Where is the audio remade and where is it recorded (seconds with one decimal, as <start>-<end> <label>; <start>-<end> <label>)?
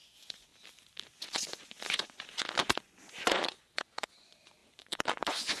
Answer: 0.0-0.5 remade; 0.5-1.2 recorded; 1.2-5.6 remade